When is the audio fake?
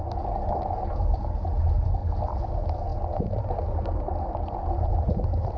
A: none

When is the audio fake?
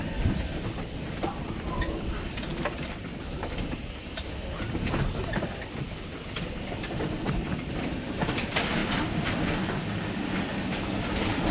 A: 0.0-2.5 (vocoder, BigVGAN v2); 3.8-11.5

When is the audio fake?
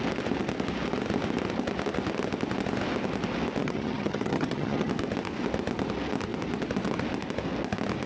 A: 3.6-4.9 (vocoder, HiFi-GAN)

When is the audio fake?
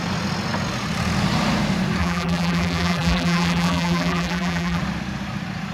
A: 2.0-4.8 (vocoder, BigVGAN v2)